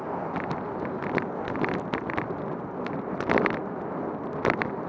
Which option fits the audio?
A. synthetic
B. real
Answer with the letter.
B